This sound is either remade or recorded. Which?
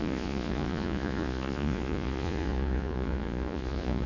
remade